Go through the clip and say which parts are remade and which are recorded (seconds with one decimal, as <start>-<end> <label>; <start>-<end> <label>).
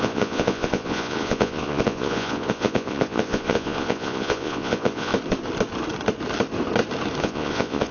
0.0-5.1 remade; 5.1-7.2 recorded; 7.2-7.9 remade